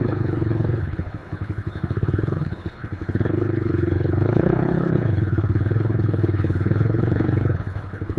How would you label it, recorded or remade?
remade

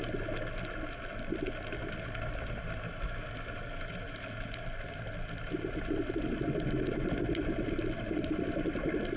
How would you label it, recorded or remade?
recorded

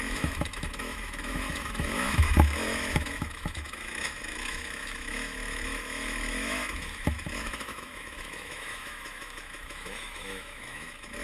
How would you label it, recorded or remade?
remade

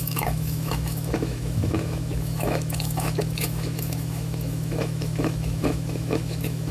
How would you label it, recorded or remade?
remade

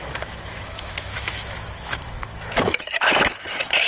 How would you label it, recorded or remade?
remade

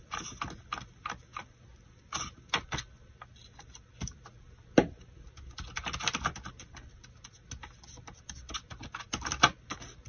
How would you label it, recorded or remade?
recorded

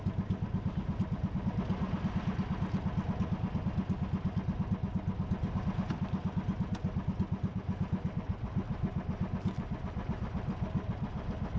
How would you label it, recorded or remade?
recorded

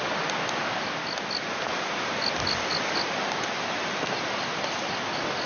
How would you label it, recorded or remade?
recorded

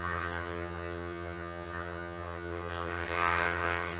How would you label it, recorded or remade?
remade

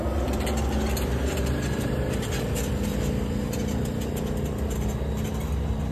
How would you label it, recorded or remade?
recorded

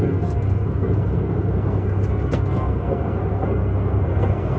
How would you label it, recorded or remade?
remade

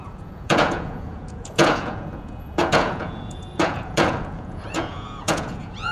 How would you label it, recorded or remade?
remade